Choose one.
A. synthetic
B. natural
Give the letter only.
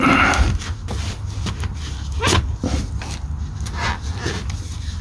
B